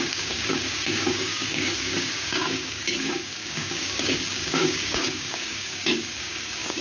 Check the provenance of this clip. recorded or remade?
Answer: remade